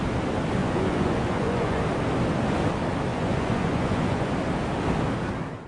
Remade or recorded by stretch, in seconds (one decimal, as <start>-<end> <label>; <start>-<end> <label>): 0.0-0.6 recorded; 0.6-1.8 remade; 1.8-3.1 recorded; 3.1-4.3 remade; 4.3-5.7 recorded